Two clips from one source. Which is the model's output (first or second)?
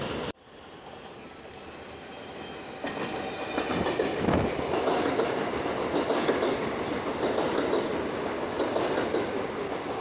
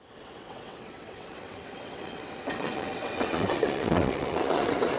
second